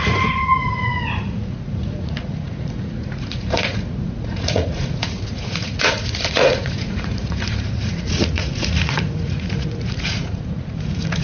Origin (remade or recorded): remade